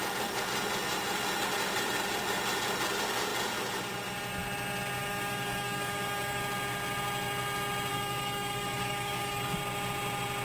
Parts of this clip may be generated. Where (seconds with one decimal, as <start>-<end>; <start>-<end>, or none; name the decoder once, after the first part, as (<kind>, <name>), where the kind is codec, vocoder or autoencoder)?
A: 5.0-6.4 (codec, DAC); 7.9-9.6